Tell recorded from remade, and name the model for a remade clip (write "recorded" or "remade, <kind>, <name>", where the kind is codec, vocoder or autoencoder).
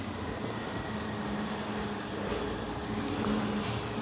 recorded